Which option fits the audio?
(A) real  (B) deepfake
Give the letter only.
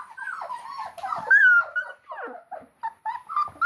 A